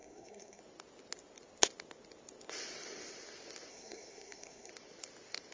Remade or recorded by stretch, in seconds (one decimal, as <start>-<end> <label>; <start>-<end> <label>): 0.0-0.6 remade; 0.6-3.7 recorded; 3.7-4.7 remade; 4.7-5.5 recorded